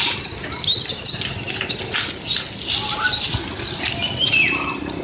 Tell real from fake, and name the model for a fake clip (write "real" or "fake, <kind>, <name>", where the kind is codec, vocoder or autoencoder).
real